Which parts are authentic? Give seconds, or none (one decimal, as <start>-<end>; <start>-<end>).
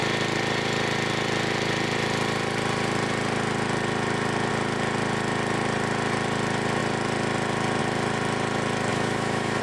0.0-8.9